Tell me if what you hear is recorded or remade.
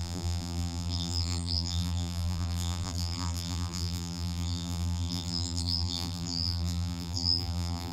remade